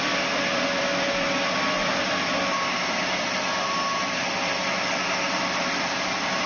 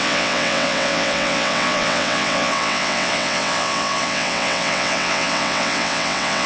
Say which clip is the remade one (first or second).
second